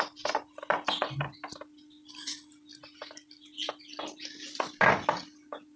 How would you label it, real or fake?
real